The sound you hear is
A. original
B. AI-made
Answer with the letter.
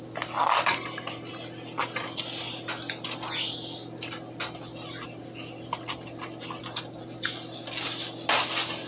A